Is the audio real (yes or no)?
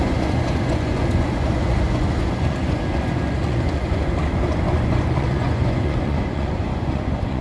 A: no